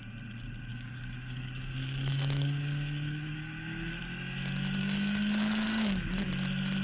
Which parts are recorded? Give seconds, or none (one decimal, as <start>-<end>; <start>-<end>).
0.0-0.7; 3.9-4.8; 6.3-6.8